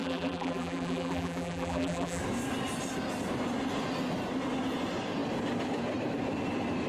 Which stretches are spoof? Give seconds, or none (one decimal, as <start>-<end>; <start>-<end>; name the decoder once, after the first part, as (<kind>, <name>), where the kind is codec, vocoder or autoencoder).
0.0-2.2 (vocoder, BigVGAN v2)